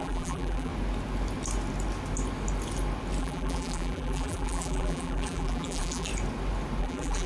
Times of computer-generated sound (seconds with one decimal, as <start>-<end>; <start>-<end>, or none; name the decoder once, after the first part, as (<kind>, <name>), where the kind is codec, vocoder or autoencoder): 0.0-0.7 (vocoder, BigVGAN v2); 3.2-6.1; 6.8-7.3